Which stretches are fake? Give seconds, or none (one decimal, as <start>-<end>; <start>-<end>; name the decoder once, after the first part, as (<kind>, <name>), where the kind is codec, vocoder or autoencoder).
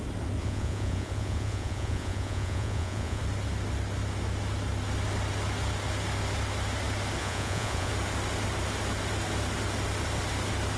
0.4-3.2 (vocoder, Vocos); 7.2-7.9